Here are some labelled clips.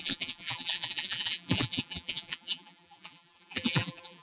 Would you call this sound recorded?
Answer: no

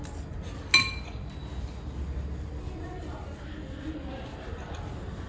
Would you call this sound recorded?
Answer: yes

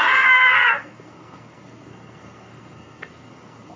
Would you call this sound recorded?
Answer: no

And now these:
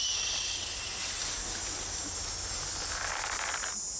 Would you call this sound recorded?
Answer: yes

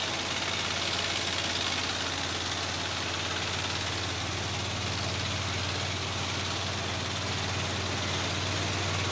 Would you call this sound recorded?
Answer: yes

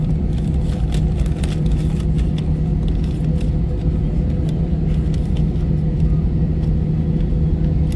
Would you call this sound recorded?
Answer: yes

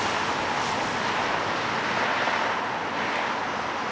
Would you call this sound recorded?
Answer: yes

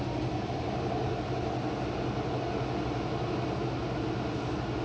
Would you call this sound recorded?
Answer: yes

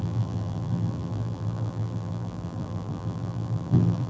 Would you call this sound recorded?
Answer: no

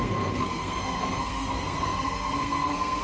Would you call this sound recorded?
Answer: no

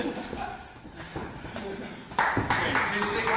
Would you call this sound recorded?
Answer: yes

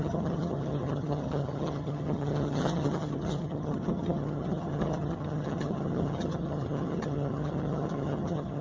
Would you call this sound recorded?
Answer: no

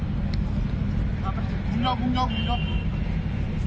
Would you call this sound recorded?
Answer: yes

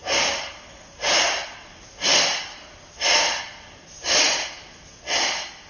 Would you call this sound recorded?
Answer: yes